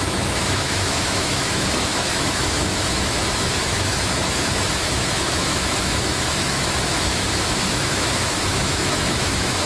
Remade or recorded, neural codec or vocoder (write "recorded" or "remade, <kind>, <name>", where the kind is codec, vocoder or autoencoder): remade, autoencoder, DAC-VAE